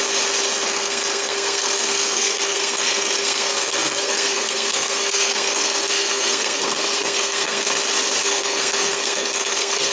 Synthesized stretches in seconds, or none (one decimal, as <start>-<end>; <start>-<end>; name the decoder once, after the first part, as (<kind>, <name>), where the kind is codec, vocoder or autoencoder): 0.7-7.7 (codec, SNAC); 8.2-9.9